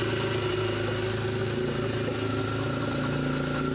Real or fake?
real